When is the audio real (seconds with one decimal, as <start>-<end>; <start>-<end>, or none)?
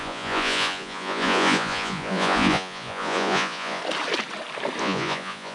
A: 3.8-4.8